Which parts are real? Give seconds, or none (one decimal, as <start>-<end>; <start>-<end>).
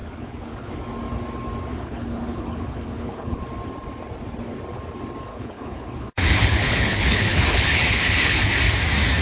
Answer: 0.7-1.7; 3.4-5.3; 8.5-9.2